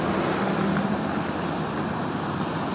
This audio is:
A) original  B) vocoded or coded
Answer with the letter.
A